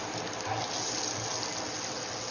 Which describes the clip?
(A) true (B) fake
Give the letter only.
A